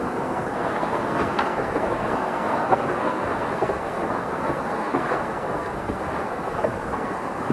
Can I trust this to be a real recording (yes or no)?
no